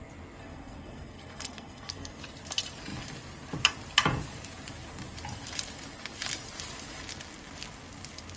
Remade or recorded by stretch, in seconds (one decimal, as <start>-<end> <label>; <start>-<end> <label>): 0.0-0.4 recorded; 0.4-2.2 remade; 2.2-8.4 recorded